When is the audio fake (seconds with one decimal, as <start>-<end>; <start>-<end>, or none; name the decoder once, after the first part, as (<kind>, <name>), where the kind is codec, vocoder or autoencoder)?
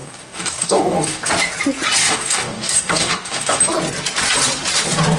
0.0-1.3 (codec, DAC); 2.0-3.6